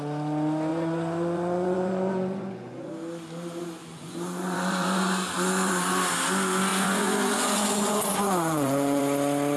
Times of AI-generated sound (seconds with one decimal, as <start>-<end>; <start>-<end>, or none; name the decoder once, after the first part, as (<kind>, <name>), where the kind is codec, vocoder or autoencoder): 0.7-2.9 (vocoder, Vocos); 3.8-5.9; 6.7-9.0